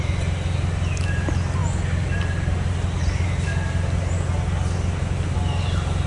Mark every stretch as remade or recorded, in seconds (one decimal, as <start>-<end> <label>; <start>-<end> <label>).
0.0-6.1 recorded